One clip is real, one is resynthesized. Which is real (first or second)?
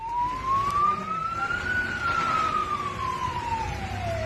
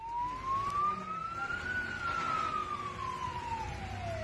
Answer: second